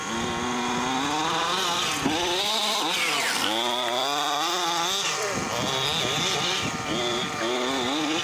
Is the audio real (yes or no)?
yes